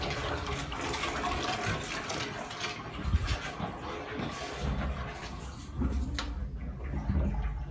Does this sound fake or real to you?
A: real